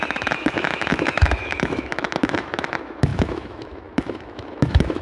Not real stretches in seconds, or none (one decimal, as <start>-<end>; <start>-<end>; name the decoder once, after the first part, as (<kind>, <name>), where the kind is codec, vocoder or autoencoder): 0.0-5.0 (autoencoder, DAC-VAE)